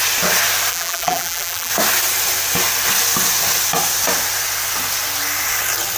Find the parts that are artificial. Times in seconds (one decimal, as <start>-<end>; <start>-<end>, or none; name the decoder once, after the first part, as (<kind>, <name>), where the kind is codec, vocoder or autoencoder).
0.7-1.7 (vocoder, BigVGAN v2)